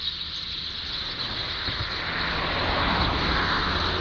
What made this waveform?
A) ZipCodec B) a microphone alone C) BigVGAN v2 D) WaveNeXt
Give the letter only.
B